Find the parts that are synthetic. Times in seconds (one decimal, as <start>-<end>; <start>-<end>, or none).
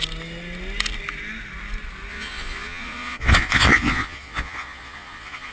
2.1-5.5